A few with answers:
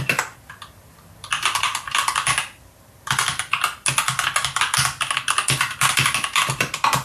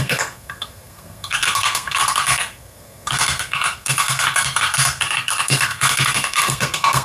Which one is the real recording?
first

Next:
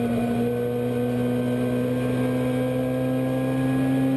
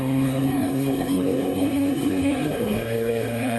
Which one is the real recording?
first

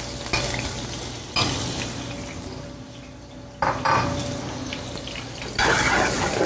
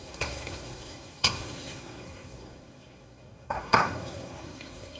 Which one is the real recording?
first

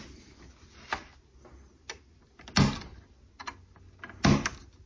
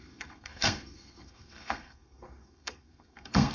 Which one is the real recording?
first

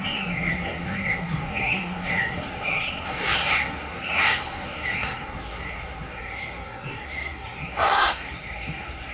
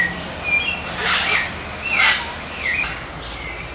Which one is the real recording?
second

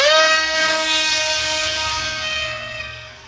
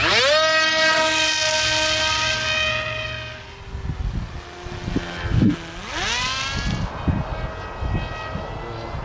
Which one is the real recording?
second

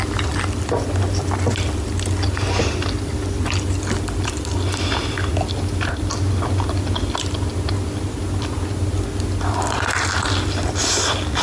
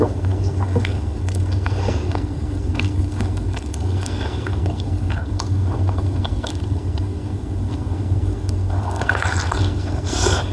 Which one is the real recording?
first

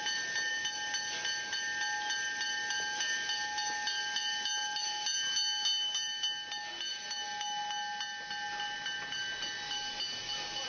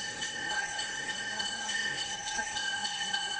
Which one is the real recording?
first